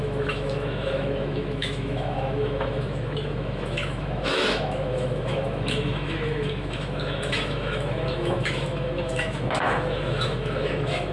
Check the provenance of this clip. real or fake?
fake